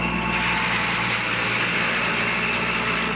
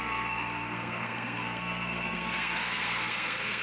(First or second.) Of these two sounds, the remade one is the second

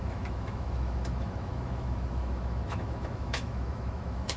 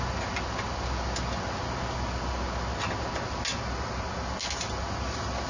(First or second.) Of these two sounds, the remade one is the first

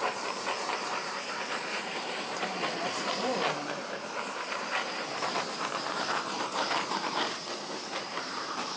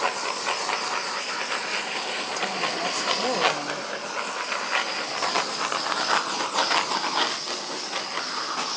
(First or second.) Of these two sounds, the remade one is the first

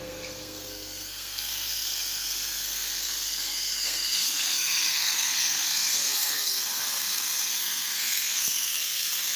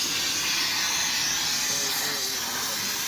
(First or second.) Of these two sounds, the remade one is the first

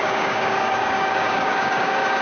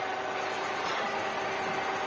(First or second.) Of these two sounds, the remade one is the first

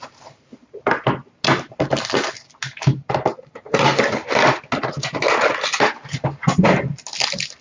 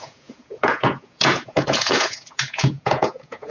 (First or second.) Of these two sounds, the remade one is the second